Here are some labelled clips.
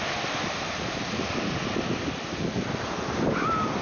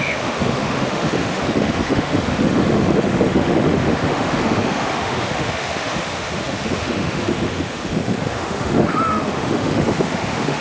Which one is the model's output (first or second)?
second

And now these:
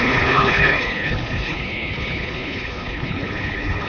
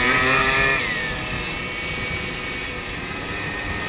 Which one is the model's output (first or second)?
first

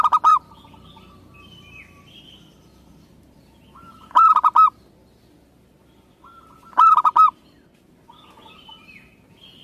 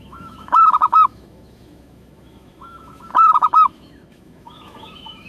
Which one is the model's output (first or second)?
second